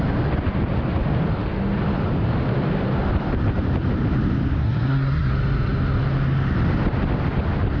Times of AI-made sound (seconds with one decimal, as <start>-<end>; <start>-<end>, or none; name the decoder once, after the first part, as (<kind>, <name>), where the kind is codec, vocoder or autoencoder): 4.6-5.3 (codec, SNAC)